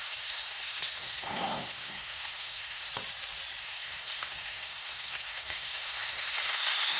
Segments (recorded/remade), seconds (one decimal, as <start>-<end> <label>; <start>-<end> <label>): 0.0-2.9 remade; 2.9-3.6 recorded; 3.6-7.0 remade